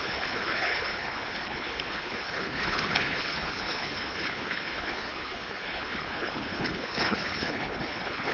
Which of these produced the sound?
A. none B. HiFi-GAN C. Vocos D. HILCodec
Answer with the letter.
D